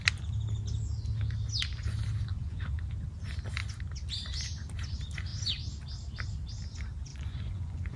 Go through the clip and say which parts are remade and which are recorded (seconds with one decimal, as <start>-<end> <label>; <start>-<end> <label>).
0.0-2.3 recorded; 2.3-2.8 remade; 2.8-7.1 recorded; 7.1-8.0 remade